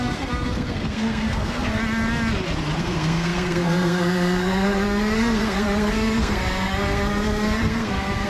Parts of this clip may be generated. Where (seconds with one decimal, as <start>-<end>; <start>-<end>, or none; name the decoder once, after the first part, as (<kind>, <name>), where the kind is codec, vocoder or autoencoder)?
0.0-1.8 (codec, SNAC); 2.8-8.3